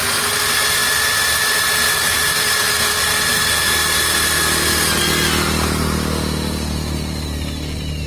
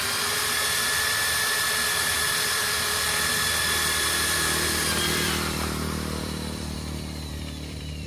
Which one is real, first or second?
first